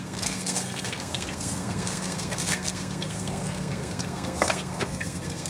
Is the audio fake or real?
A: fake